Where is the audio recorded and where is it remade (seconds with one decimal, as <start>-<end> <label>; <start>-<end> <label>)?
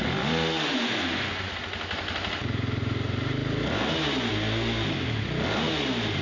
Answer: 0.0-0.7 recorded; 0.7-1.5 remade; 1.5-6.2 recorded